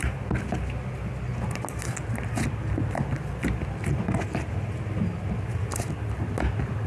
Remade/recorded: recorded